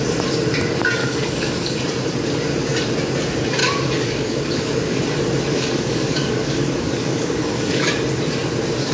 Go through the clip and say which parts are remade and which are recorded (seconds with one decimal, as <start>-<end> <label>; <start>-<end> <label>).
0.0-1.0 recorded; 1.0-1.8 remade; 1.8-3.6 recorded; 3.6-5.0 remade; 5.0-5.5 recorded; 5.5-7.9 remade; 7.9-8.9 recorded